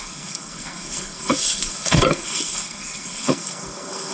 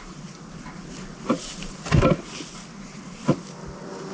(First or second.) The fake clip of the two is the first